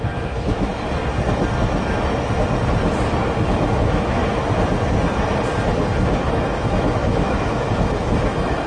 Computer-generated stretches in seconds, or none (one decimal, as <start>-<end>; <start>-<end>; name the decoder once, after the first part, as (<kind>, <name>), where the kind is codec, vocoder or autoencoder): 0.0-0.7 (autoencoder, DAC-VAE); 3.7-4.2; 6.3-8.7